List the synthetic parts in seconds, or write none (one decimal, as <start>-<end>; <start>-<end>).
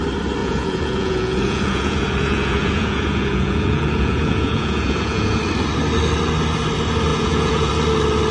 0.4-5.4; 7.1-7.7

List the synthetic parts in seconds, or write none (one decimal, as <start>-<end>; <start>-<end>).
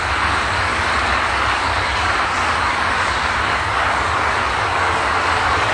0.0-5.7